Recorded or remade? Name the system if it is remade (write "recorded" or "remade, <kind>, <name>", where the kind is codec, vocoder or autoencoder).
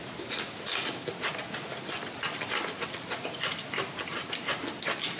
recorded